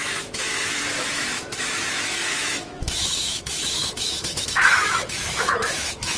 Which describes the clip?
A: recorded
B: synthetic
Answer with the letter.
B